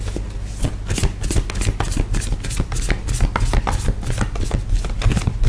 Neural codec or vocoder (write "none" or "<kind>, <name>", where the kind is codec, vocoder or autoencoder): none